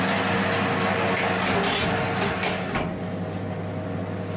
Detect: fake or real real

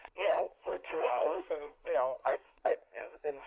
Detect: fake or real fake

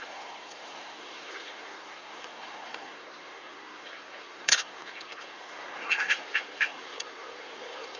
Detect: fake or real fake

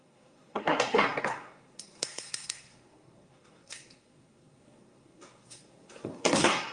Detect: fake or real fake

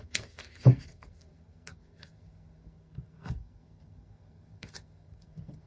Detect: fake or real fake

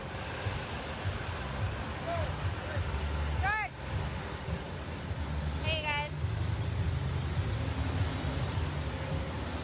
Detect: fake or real real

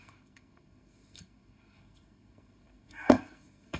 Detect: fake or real fake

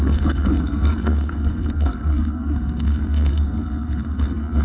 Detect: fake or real fake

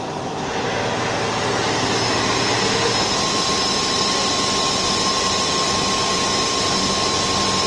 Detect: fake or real real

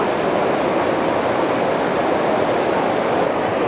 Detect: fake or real real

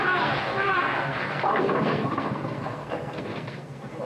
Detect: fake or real fake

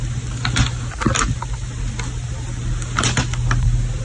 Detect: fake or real real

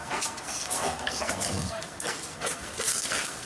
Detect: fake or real fake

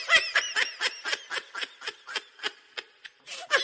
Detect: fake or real real